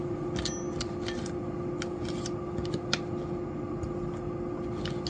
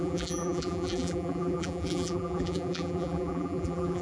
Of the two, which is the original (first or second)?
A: first